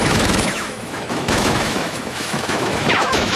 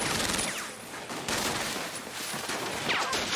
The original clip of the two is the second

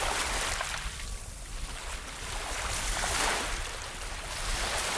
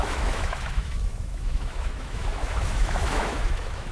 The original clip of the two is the first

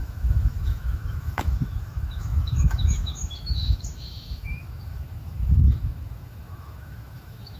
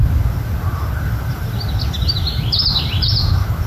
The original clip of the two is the second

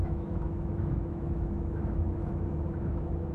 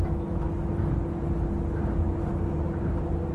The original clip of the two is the second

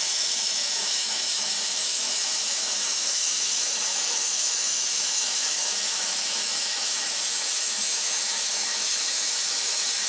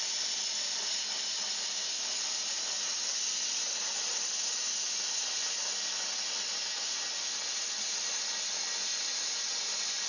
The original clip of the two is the second